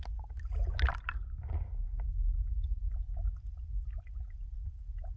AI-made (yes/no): no